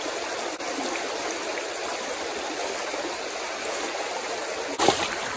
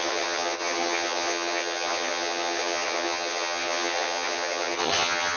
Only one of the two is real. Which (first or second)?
first